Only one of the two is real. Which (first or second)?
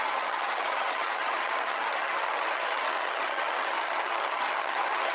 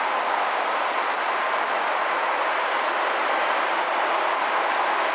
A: second